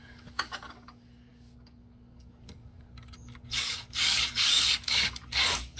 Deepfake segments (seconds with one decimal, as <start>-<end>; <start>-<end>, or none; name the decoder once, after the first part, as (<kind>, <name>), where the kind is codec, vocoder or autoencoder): 0.0-5.8 (codec, DAC)